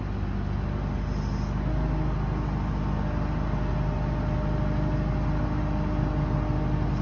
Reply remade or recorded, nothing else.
recorded